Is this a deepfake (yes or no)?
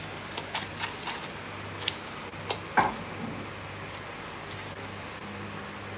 no